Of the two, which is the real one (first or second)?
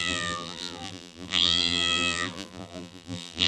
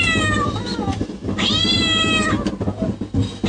second